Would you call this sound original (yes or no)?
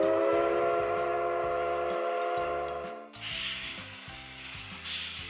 yes